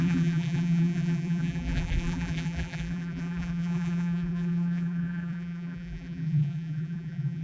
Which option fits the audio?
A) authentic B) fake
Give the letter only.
B